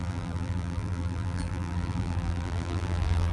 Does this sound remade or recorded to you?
remade